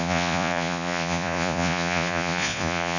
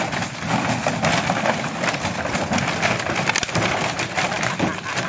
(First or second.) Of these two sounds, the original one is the second